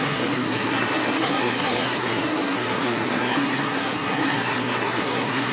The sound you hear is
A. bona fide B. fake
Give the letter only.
B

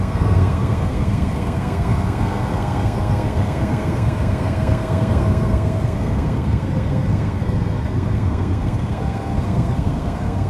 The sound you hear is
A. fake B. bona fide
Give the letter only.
A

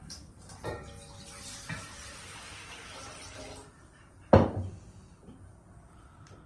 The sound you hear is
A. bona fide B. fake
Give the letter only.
A